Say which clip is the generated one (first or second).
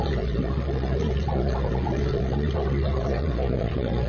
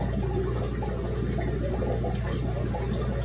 first